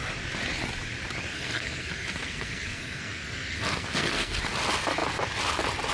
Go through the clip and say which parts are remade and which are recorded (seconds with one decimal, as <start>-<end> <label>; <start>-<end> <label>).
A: 0.0-1.3 recorded; 1.3-4.4 remade; 4.4-5.9 recorded